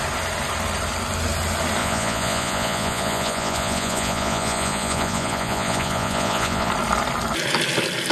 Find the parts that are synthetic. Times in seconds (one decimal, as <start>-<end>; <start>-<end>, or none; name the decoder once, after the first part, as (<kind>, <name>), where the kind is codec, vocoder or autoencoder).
1.8-6.7 (vocoder, Vocos)